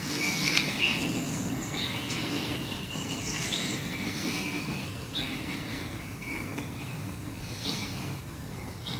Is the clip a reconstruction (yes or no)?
yes